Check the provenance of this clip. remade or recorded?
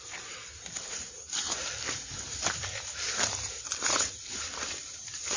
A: remade